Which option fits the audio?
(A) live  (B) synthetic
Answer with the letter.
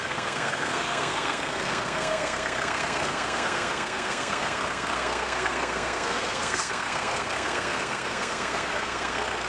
B